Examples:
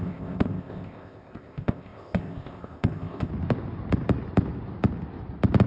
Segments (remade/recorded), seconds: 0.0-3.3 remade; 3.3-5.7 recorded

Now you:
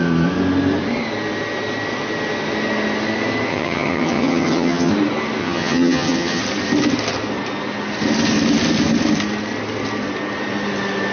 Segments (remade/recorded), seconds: 0.0-3.5 recorded; 3.5-4.9 remade; 4.9-5.4 recorded; 5.4-6.4 remade; 6.4-11.1 recorded

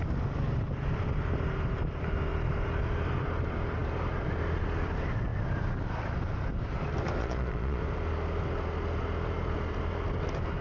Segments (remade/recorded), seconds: 0.0-7.2 recorded; 7.2-7.8 remade; 7.8-10.6 recorded